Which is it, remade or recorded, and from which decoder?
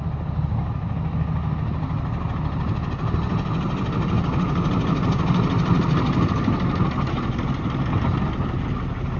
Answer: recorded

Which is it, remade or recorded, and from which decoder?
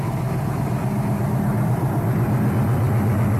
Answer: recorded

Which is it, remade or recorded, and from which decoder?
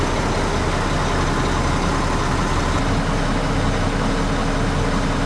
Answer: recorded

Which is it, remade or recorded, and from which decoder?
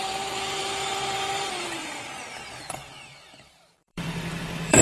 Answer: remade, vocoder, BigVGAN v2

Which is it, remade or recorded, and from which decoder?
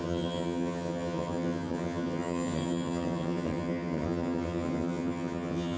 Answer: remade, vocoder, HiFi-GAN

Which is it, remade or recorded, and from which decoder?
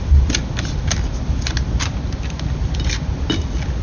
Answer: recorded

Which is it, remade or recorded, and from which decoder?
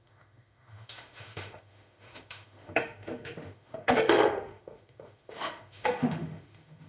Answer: remade, autoencoder, DAC-VAE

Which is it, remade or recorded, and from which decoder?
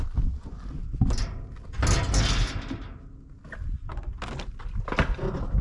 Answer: recorded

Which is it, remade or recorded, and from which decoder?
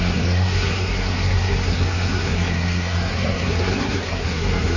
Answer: remade, codec, SNAC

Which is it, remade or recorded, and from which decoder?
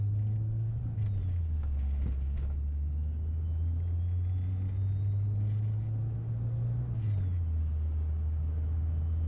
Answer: recorded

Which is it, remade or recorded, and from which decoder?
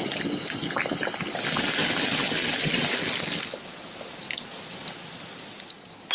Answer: recorded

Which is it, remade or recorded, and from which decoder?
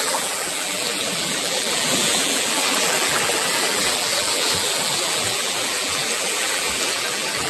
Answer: remade, vocoder, BigVGAN v2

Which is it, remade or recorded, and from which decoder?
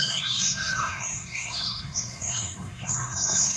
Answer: remade, codec, SNAC